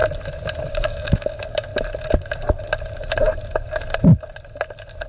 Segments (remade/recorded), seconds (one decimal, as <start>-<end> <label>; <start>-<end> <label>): 0.0-0.7 recorded; 0.7-1.7 remade; 1.7-5.1 recorded